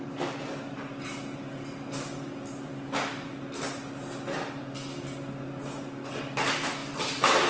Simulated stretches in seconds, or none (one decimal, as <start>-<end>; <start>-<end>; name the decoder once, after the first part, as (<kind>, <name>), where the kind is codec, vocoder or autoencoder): 6.8-7.5 (vocoder, BigVGAN v2)